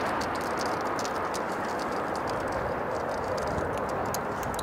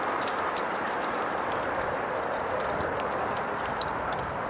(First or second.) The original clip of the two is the first